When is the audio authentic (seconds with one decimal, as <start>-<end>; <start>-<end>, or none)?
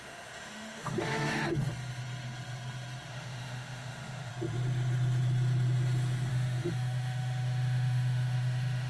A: 1.3-3.1; 4.3-6.3